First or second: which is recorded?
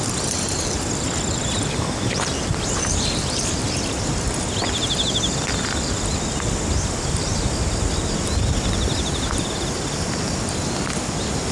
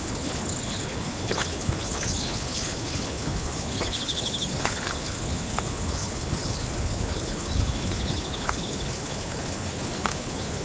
first